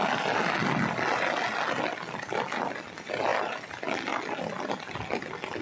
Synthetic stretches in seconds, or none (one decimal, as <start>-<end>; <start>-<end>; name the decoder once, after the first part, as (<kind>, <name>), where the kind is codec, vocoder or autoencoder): none

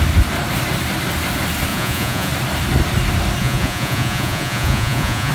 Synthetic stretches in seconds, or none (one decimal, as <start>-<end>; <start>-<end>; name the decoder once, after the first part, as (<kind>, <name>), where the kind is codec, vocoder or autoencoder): 1.7-2.3 (vocoder, Vocos); 3.4-5.3

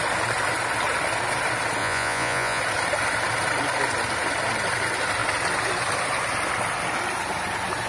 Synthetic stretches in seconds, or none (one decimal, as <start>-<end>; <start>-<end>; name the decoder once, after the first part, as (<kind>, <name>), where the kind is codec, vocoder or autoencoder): 1.8-2.6 (vocoder, Vocos)

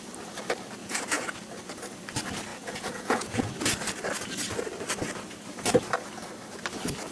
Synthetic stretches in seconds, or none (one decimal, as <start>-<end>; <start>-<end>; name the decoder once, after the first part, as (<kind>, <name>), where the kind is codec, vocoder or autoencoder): 0.8-1.3 (vocoder, Vocos); 2.5-3.5

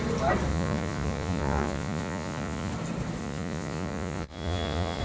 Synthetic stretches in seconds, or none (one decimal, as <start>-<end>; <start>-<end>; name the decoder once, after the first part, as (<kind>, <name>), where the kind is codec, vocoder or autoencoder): 0.5-2.7 (vocoder, Vocos); 3.2-5.0

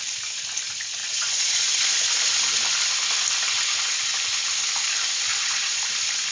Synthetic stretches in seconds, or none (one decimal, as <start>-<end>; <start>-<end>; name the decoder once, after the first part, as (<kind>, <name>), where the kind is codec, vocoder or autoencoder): 1.0-1.6 (vocoder, Vocos); 5.3-5.8

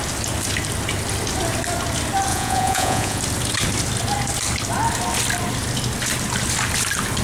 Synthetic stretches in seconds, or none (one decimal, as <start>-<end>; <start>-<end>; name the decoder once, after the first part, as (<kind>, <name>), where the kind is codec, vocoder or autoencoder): 2.3-3.2 (vocoder, Vocos)

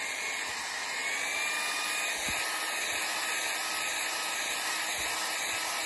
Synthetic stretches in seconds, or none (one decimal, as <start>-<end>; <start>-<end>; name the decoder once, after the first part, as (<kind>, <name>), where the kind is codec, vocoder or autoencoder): none